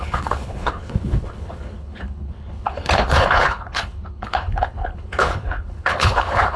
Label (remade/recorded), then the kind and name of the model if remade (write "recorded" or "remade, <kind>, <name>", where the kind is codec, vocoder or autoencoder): remade, codec, HILCodec